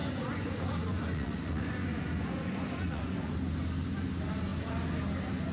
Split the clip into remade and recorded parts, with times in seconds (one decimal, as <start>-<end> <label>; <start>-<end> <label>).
0.0-3.3 remade; 3.3-5.5 recorded